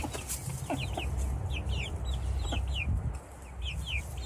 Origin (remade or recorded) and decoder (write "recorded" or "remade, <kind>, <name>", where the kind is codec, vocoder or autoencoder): recorded